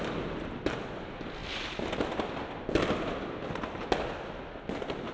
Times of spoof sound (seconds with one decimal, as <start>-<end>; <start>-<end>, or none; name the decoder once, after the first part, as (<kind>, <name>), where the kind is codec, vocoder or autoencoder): none